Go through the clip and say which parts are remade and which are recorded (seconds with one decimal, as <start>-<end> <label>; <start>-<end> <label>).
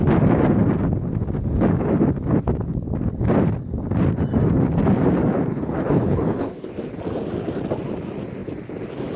0.0-5.5 recorded; 5.5-6.7 remade; 6.7-9.2 recorded